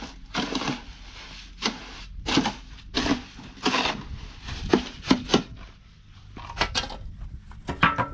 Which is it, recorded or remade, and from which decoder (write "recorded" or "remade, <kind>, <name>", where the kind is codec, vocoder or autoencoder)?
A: recorded